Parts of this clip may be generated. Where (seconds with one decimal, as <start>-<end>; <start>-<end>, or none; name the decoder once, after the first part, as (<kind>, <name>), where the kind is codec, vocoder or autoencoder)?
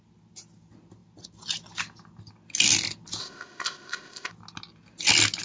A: 3.2-4.3 (codec, ZipCodec)